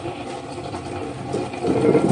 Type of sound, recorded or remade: remade